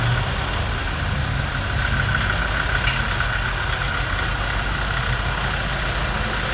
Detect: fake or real real